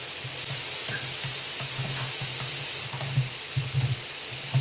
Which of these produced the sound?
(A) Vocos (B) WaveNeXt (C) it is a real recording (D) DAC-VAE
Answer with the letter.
C